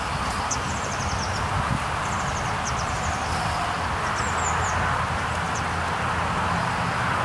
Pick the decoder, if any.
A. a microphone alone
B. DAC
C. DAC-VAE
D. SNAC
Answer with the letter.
A